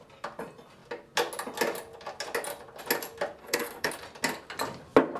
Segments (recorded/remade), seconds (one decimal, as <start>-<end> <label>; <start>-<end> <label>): 0.0-3.4 recorded; 3.4-3.9 remade; 3.9-5.2 recorded